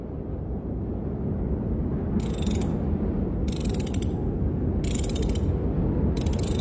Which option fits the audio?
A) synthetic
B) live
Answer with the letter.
B